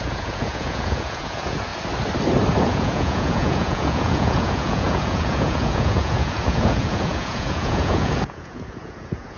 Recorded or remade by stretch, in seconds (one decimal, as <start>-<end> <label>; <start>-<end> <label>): 0.0-1.7 remade; 1.7-2.6 recorded; 2.6-9.4 remade